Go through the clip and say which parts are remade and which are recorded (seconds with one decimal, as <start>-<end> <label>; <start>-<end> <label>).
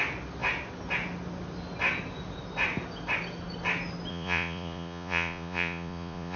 0.0-4.1 recorded; 4.1-6.4 remade